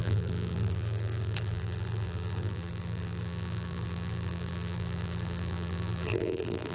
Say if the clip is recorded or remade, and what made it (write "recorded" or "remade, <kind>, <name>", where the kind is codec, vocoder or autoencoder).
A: remade, vocoder, BigVGAN v2